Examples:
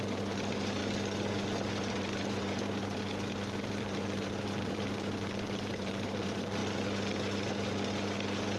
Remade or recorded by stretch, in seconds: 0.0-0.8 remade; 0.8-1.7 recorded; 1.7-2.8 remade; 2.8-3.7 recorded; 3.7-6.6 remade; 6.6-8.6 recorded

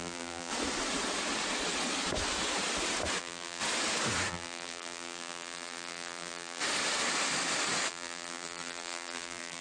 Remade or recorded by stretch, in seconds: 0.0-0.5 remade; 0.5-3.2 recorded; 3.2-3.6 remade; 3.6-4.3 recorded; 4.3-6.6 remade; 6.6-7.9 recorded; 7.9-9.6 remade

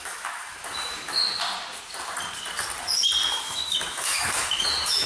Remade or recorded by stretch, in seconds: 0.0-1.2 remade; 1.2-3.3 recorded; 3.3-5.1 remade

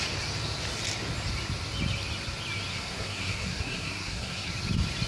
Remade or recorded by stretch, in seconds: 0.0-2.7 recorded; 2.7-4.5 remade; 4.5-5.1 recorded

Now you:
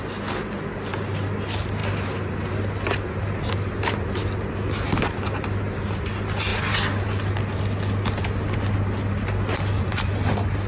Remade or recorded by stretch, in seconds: 0.0-10.7 recorded